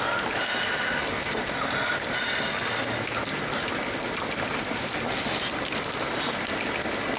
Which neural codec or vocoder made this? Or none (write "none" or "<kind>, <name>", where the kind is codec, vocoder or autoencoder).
none